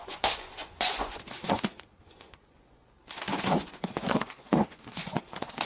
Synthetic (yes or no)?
yes